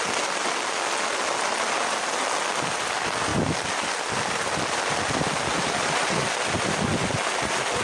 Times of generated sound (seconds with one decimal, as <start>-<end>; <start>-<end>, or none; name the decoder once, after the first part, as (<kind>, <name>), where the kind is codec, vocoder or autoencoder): none